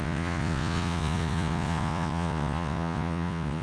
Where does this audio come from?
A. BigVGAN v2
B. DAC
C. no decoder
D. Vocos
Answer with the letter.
D